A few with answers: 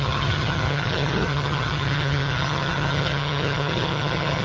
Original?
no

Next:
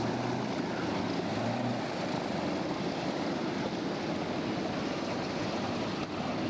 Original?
yes